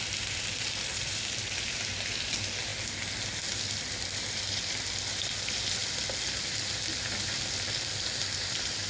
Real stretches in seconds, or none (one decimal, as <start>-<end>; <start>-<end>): 2.7-3.5; 5.8-8.0